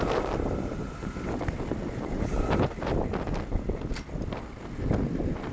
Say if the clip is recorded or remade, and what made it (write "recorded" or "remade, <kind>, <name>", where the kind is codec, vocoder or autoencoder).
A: recorded